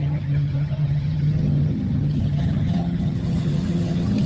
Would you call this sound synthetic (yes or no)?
yes